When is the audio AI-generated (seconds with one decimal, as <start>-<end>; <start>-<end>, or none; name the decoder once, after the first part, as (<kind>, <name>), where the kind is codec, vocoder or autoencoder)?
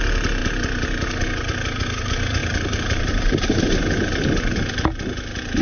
2.4-3.8 (vocoder, BigVGAN v2)